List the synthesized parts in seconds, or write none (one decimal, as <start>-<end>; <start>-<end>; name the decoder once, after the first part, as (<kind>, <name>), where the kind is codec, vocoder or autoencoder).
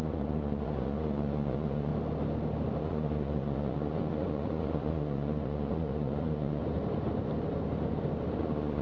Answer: 0.0-1.9 (vocoder, Vocos); 2.8-6.6; 8.4-8.8